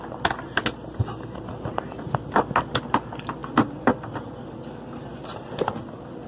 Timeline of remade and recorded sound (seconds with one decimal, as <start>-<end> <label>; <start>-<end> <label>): 0.0-6.3 recorded